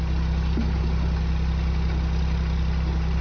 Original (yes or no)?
yes